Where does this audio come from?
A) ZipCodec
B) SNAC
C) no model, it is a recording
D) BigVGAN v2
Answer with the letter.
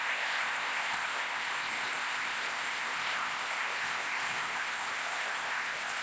A